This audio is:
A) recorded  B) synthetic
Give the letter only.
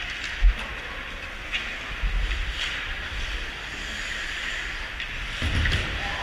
A